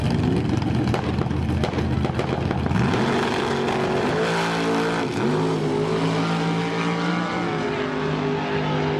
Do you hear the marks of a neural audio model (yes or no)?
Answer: no